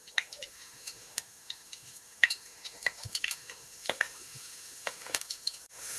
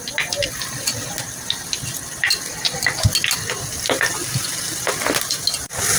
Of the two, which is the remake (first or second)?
first